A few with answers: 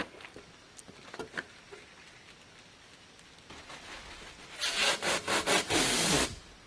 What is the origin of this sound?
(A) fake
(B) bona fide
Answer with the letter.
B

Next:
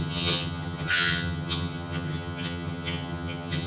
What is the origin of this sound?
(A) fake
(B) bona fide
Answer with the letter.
A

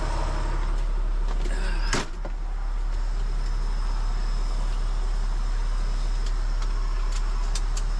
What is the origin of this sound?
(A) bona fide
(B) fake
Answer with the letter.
A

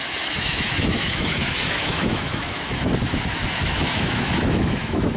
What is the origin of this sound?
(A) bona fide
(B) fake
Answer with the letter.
B